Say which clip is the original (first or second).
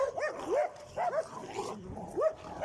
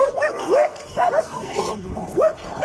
first